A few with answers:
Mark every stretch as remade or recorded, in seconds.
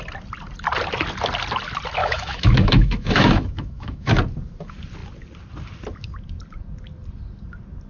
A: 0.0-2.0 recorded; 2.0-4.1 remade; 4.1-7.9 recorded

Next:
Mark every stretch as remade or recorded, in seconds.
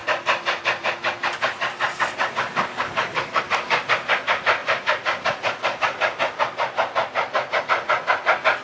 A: 0.0-2.7 recorded; 2.7-3.4 remade; 3.4-8.6 recorded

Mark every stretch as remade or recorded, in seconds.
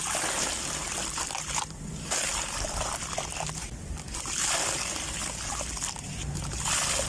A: 0.0-7.1 recorded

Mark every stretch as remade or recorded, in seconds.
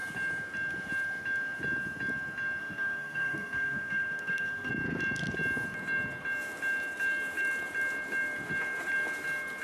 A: 0.0-2.6 recorded; 2.6-4.7 remade; 4.7-9.6 recorded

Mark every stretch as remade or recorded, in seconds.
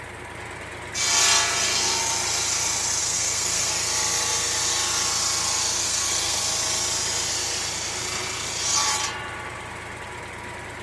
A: 0.0-3.0 recorded; 3.0-3.7 remade; 3.7-5.8 recorded; 5.8-6.4 remade; 6.4-10.8 recorded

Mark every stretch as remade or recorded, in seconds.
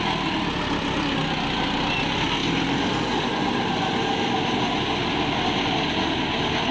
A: 0.0-6.7 recorded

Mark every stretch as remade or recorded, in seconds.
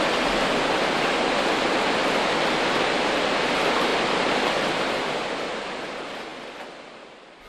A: 0.0-7.5 recorded